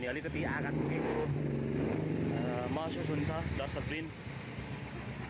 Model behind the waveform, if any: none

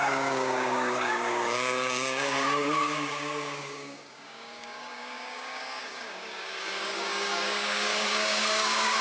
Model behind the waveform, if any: codec, DAC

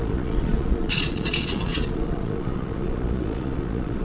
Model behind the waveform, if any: vocoder, Vocos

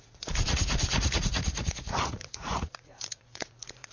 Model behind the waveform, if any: vocoder, Vocos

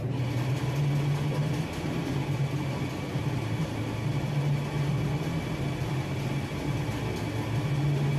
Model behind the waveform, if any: none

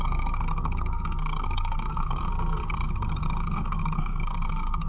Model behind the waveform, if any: codec, SNAC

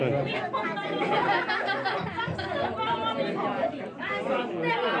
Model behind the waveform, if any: none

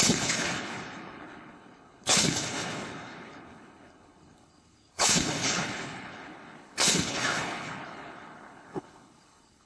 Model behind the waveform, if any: codec, HILCodec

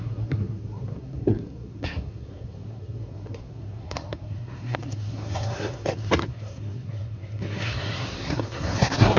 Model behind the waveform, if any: codec, SNAC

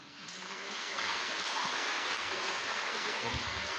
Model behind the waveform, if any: codec, SNAC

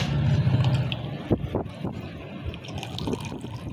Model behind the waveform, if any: none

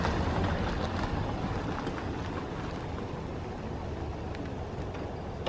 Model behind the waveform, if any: none